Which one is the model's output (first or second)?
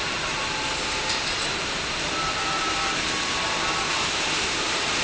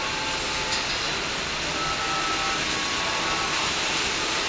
first